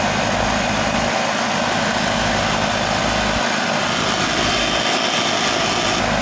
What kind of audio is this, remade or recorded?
recorded